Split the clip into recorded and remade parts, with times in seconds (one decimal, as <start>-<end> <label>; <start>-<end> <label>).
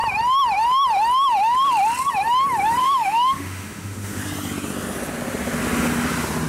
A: 0.0-2.8 recorded; 2.8-4.2 remade; 4.2-6.5 recorded